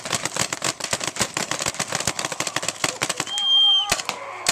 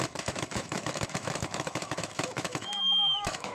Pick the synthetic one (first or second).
second